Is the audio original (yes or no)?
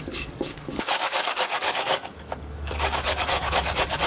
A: no